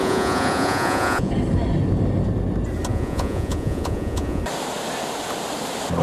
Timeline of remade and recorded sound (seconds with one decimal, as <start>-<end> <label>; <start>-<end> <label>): 0.0-1.3 remade; 1.3-2.9 recorded; 2.9-4.4 remade; 4.4-6.0 recorded